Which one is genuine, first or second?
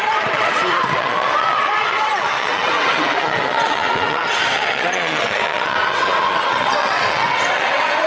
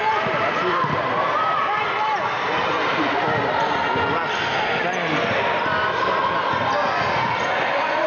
second